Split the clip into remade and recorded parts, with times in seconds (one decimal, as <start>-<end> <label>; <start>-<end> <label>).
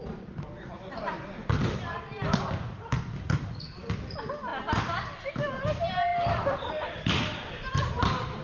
0.0-8.4 recorded